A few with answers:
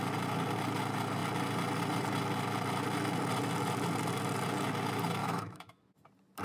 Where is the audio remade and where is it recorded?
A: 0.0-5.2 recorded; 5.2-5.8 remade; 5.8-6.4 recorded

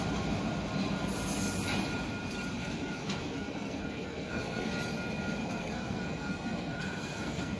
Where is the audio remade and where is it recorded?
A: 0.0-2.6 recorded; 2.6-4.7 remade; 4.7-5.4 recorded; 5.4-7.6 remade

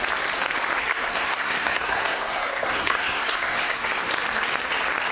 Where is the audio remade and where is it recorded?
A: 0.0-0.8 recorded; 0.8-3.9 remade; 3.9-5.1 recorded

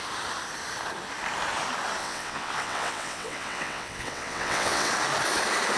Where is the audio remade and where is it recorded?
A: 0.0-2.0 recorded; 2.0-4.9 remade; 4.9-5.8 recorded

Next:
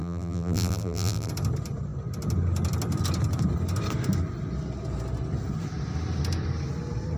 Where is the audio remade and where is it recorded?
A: 0.0-1.3 remade; 1.3-7.2 recorded